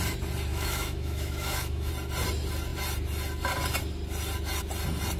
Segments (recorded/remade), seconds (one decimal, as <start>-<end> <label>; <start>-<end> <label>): 0.0-0.5 recorded; 0.5-1.9 remade; 1.9-5.2 recorded